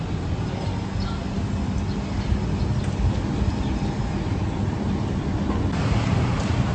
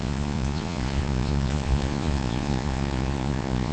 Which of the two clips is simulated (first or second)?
second